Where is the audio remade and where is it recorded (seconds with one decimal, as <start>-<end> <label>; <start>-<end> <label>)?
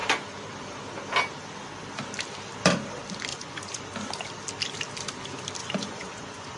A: 0.0-3.3 recorded; 3.3-3.8 remade; 3.8-5.6 recorded; 5.6-6.6 remade